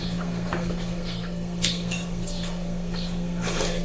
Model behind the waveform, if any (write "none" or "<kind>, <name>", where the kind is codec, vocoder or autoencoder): codec, SNAC